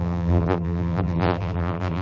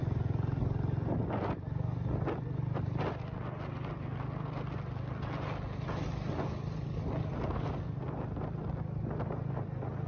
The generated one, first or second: first